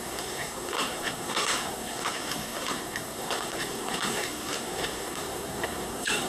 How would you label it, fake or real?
fake